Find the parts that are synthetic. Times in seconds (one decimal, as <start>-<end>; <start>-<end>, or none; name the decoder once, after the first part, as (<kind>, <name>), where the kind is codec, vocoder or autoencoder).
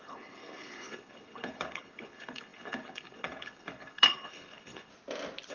0.0-4.9 (codec, HILCodec)